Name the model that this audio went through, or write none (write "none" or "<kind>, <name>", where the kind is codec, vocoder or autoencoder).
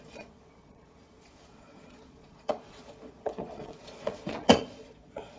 vocoder, Vocos